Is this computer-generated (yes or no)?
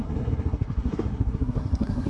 yes